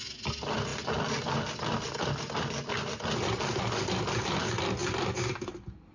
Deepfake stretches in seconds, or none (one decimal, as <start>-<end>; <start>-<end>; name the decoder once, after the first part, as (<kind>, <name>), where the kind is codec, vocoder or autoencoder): none